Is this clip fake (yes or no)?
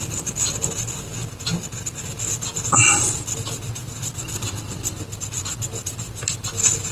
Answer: no